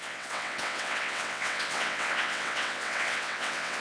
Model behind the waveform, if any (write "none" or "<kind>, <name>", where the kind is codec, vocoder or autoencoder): vocoder, WaveNeXt